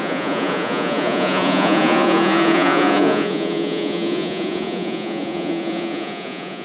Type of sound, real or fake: fake